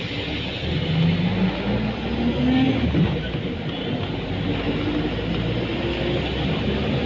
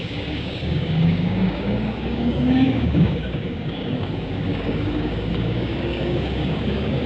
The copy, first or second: second